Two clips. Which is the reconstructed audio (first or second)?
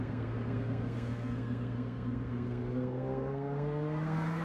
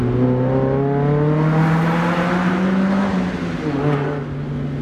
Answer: first